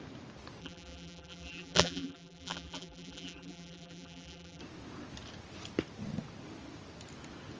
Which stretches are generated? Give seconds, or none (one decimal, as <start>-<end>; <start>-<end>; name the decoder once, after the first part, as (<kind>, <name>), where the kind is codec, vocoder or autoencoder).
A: 0.6-4.6 (vocoder, BigVGAN v2)